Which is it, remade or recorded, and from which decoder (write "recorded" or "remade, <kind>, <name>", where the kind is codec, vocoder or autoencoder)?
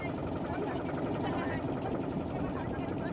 recorded